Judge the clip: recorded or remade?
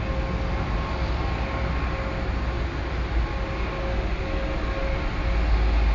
recorded